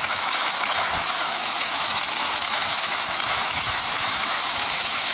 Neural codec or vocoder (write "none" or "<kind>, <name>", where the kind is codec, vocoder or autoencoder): autoencoder, DAC-VAE